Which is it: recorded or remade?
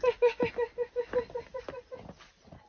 recorded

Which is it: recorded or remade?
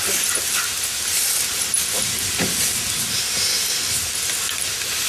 recorded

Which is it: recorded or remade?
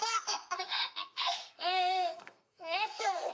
remade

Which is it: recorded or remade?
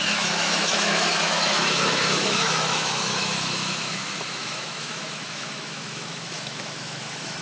remade